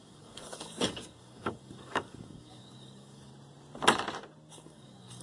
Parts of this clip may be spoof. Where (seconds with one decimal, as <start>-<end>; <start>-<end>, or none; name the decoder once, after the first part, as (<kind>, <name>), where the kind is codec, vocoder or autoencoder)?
0.0-3.3 (codec, DAC); 4.5-5.2